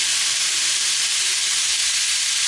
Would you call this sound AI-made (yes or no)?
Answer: no